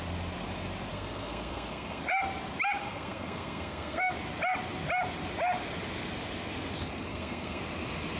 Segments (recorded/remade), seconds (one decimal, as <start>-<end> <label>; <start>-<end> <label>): 0.0-0.9 recorded; 0.9-2.0 remade; 2.0-2.8 recorded; 2.8-4.1 remade; 4.1-7.1 recorded; 7.1-7.6 remade; 7.6-8.2 recorded